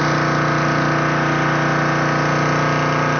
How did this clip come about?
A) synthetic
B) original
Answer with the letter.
B